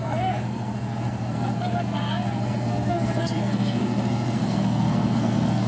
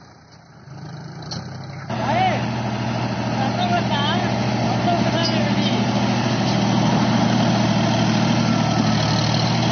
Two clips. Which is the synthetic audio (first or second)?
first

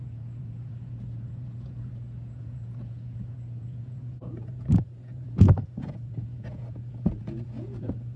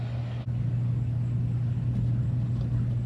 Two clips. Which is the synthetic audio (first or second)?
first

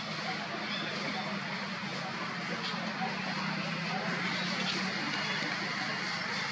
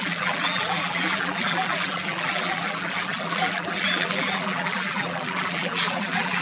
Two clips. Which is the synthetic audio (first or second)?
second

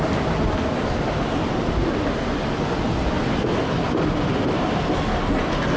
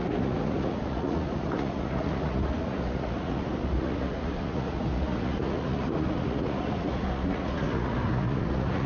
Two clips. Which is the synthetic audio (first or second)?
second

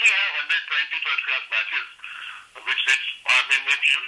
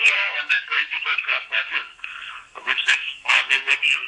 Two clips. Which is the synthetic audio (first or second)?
second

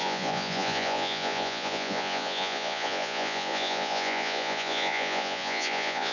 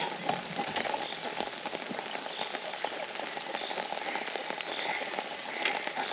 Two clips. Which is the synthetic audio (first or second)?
first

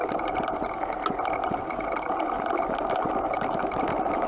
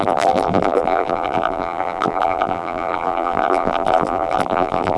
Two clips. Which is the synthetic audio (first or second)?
second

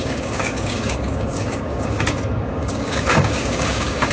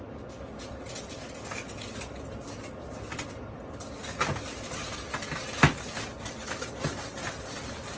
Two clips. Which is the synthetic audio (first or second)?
first